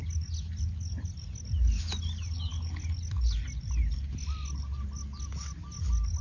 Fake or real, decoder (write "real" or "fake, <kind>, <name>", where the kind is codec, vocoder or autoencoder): real